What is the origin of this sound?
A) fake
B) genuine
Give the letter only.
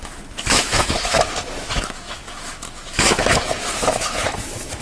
A